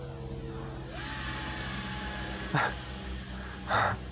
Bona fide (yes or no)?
yes